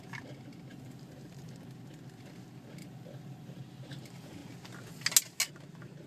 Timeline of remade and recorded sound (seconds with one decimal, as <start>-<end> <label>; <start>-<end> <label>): 0.0-0.7 recorded; 0.7-1.5 remade; 1.5-2.8 recorded; 2.8-3.6 remade; 3.6-6.1 recorded

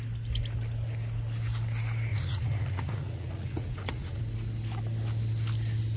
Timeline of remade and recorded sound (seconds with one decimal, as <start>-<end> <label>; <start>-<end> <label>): 0.0-2.1 recorded; 2.1-4.2 remade; 4.2-6.0 recorded